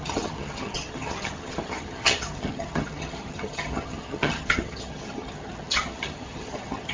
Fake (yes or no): yes